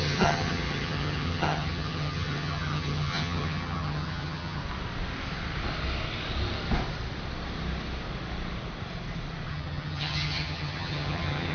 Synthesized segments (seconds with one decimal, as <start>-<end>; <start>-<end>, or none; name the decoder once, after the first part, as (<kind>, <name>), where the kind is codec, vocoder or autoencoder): 0.0-4.6 (vocoder, HiFi-GAN); 9.5-11.5